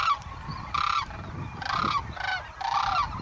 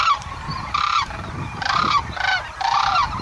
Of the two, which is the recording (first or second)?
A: first